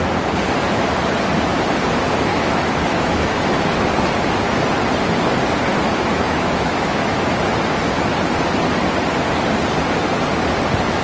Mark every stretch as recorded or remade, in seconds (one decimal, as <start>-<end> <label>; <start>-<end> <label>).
0.0-2.3 recorded; 2.3-3.4 remade; 3.4-5.9 recorded; 5.9-7.4 remade; 7.4-11.0 recorded